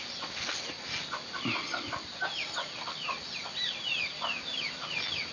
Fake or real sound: real